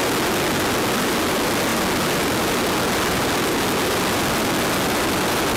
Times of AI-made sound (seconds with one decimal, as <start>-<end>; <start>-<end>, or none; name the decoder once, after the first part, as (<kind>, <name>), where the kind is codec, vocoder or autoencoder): none